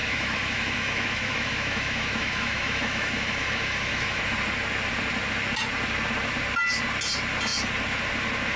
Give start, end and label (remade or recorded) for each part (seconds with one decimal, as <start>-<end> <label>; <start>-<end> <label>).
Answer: 0.0-4.2 remade; 4.2-8.6 recorded